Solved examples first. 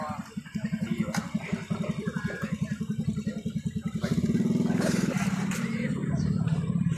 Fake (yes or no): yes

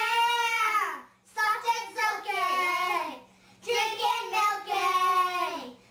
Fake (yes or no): no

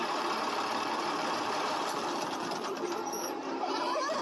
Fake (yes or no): yes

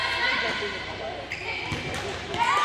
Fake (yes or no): no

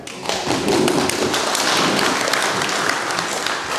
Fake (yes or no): no